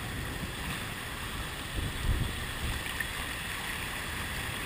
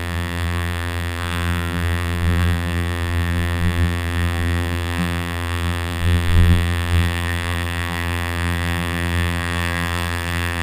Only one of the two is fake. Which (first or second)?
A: second